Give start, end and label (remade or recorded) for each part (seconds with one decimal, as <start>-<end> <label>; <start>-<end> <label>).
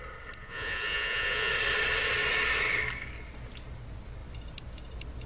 0.0-0.4 recorded; 0.4-1.5 remade; 1.5-5.3 recorded